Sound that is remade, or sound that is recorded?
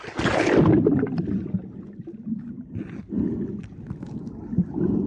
remade